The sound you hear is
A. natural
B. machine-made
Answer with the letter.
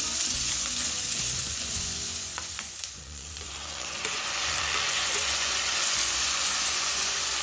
B